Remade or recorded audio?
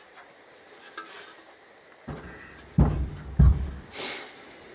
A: recorded